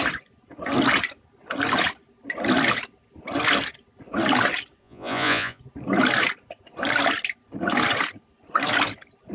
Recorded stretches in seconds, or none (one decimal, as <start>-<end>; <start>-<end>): 0.0-4.8; 5.6-9.3